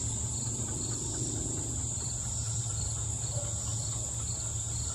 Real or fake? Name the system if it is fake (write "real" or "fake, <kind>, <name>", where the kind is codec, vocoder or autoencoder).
fake, vocoder, BigVGAN v2